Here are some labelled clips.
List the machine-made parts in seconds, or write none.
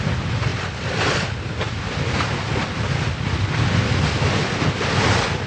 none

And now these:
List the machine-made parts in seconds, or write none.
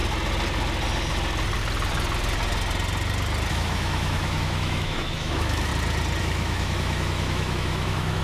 3.5-5.7 (autoencoder, DAC-VAE); 6.2-8.2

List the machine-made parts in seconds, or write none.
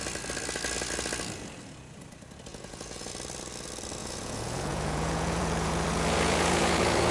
2.5-3.1 (vocoder, Vocos); 4.0-7.1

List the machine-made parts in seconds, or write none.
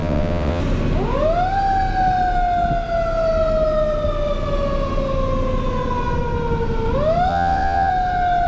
0.0-0.6 (vocoder, WaveNeXt); 7.3-7.9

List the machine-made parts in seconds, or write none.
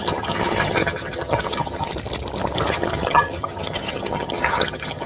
0.0-1.9 (vocoder, HiFi-GAN); 2.7-5.1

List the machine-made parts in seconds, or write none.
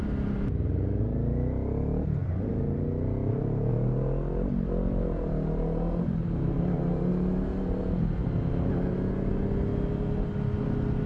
none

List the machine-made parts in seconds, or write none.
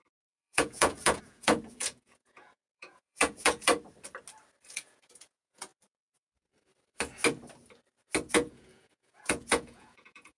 0.0-3.7 (vocoder, Vocos); 4.7-5.7; 8.3-10.4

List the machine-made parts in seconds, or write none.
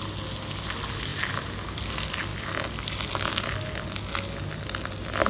none